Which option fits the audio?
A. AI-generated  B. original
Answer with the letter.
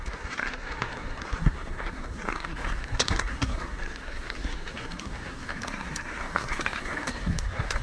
A